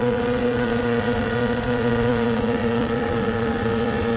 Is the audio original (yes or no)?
no